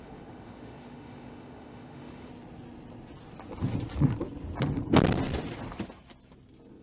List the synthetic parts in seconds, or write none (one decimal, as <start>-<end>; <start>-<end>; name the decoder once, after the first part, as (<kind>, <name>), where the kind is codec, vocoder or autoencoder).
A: 0.0-2.3 (autoencoder, DAC-VAE)